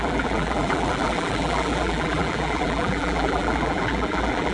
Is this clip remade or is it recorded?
remade